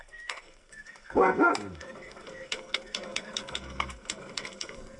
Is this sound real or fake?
fake